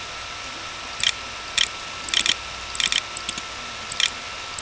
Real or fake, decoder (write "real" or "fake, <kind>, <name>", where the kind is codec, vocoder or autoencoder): real